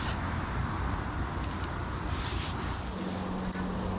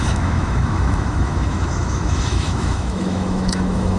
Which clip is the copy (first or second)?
second